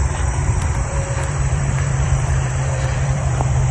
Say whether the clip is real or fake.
fake